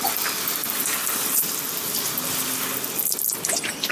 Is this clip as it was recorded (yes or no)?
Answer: yes